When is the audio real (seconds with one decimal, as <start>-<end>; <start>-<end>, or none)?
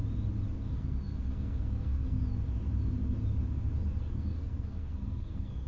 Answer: 0.0-0.7; 2.2-4.0